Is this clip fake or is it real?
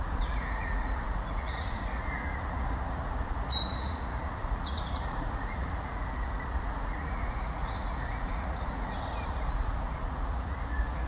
fake